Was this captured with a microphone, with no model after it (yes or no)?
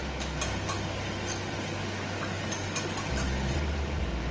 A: yes